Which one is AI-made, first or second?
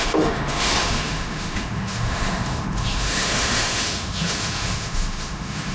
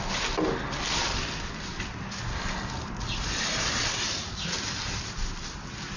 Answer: first